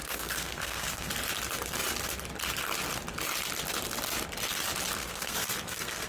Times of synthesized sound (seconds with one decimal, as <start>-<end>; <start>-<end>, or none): 0.0-1.1; 5.0-6.1